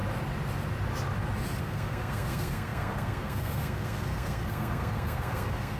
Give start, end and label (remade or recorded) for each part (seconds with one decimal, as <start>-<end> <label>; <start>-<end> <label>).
0.0-1.6 recorded; 1.6-5.8 remade